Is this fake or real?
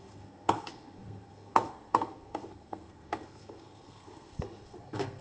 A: fake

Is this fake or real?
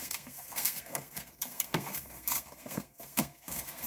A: fake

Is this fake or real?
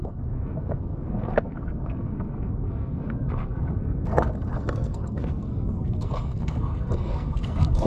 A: fake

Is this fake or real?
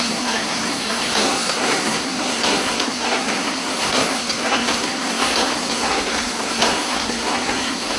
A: fake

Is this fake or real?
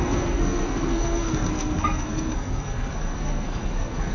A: fake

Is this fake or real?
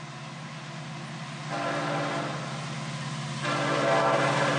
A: real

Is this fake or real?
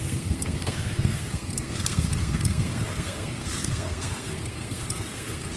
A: fake